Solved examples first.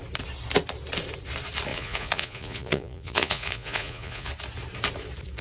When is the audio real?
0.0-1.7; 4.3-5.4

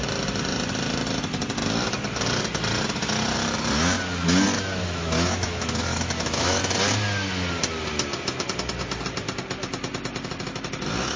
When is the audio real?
0.0-4.8; 6.6-11.2

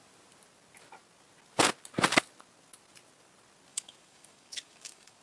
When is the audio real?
0.0-3.7

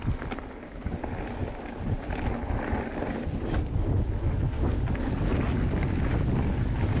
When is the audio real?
0.0-7.0

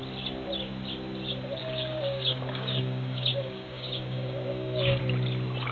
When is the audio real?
0.0-1.6; 5.0-5.7

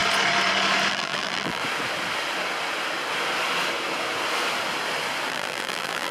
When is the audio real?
0.0-0.9; 1.6-5.3

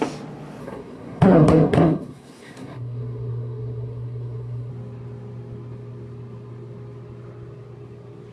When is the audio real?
0.0-0.6; 4.7-8.3